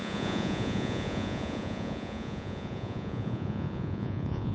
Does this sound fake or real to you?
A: fake